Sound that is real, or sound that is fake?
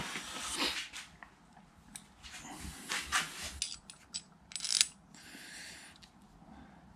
real